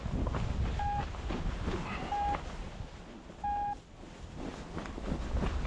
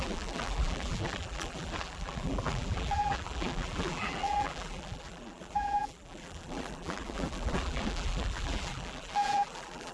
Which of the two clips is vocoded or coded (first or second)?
second